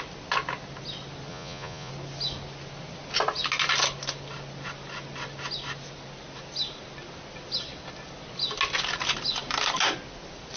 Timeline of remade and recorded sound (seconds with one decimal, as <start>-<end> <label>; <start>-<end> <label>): 0.0-1.3 recorded; 1.3-1.9 remade; 1.9-10.6 recorded